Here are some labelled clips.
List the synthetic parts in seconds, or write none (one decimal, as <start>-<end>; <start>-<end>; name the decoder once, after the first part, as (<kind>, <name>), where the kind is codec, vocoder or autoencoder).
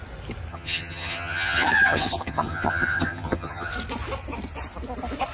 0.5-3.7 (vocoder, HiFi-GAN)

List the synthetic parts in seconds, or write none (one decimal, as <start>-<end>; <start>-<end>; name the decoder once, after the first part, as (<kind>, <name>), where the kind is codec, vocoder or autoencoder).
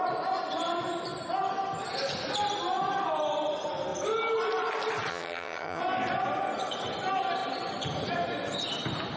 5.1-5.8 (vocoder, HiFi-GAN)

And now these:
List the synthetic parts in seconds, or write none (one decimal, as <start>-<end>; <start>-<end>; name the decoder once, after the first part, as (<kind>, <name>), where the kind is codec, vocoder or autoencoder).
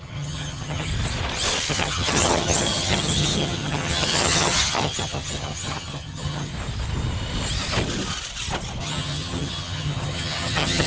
0.0-0.9 (vocoder, HiFi-GAN); 1.7-6.5; 8.8-10.9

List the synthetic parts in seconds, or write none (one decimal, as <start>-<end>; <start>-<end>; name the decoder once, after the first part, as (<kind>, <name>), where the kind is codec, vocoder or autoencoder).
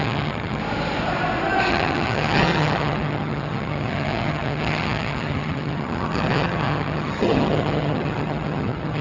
0.0-0.6 (vocoder, HiFi-GAN); 1.7-9.0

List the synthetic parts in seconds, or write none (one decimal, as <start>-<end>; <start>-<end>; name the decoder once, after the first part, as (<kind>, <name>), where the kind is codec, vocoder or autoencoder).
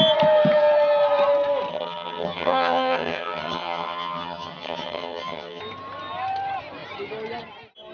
1.7-5.6 (vocoder, HiFi-GAN)